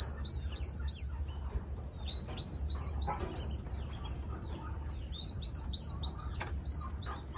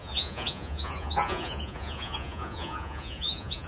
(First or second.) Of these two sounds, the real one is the first